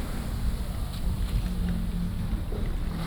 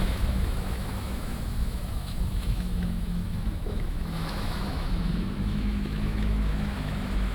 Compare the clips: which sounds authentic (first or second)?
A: first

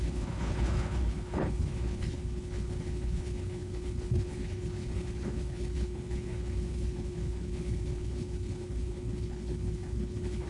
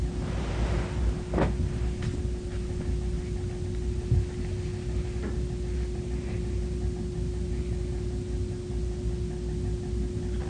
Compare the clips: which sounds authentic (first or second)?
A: second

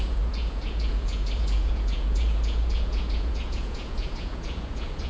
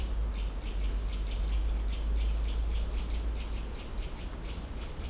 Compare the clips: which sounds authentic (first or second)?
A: second